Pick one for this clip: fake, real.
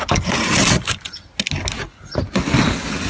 real